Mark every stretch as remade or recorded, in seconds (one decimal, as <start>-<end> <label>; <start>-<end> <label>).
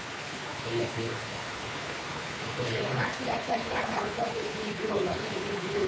0.0-5.9 remade